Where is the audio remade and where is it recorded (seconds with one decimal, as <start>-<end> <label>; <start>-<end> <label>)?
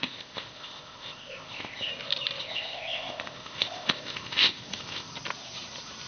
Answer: 0.0-1.9 remade; 1.9-2.4 recorded; 2.4-5.1 remade; 5.1-6.1 recorded